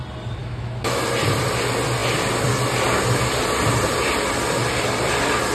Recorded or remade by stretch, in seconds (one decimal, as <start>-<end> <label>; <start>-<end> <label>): 0.0-0.4 recorded; 0.4-1.0 remade; 1.0-5.5 recorded